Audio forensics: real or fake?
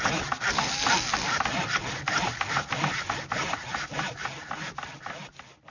real